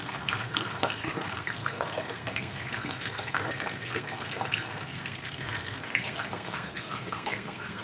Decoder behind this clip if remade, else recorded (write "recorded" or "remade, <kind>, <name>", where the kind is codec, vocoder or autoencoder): remade, codec, SNAC